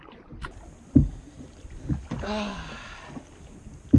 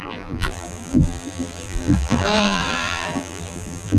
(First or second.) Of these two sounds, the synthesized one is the second